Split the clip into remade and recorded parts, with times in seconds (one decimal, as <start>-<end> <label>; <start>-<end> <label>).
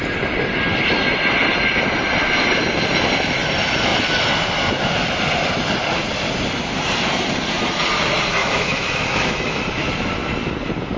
0.0-8.4 recorded; 8.4-9.6 remade; 9.6-11.0 recorded